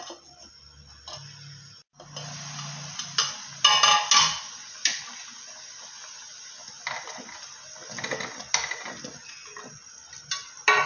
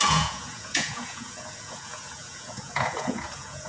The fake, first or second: second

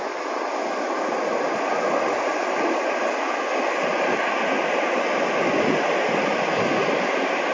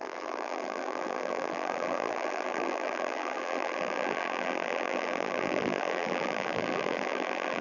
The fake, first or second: second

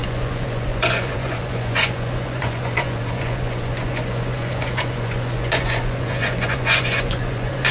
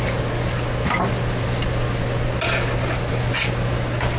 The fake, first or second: first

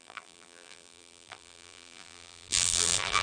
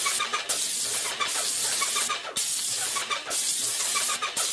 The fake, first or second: first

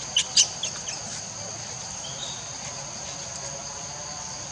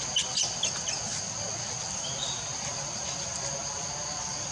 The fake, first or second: second